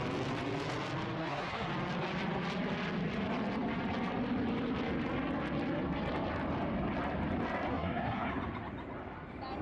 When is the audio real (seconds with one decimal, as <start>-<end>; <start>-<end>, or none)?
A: 0.0-1.2; 1.7-7.7; 8.3-9.6